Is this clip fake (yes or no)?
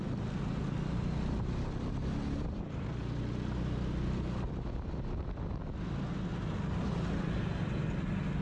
no